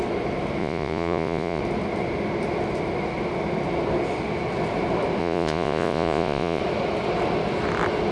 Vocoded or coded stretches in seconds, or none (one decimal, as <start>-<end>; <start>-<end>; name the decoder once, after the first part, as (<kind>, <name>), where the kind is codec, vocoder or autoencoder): 0.6-1.6 (vocoder, Vocos); 5.2-6.6